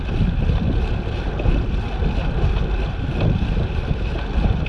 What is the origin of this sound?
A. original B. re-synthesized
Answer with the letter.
A